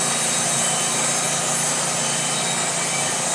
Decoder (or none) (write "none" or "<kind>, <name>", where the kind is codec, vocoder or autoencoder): none